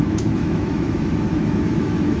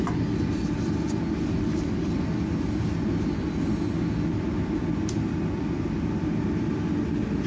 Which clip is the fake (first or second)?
first